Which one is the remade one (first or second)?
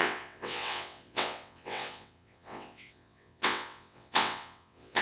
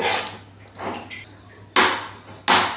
first